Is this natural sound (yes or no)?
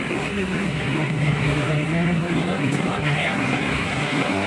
no